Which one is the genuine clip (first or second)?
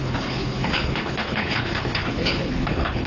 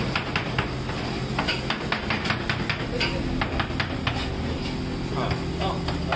second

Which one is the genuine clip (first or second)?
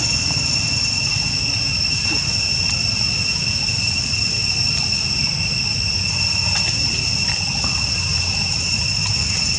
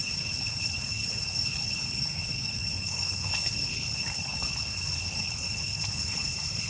first